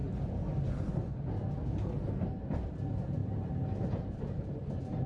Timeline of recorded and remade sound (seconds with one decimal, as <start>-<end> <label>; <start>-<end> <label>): 0.0-5.1 recorded